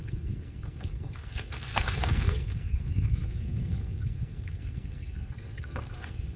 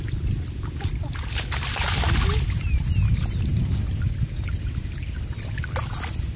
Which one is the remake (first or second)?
first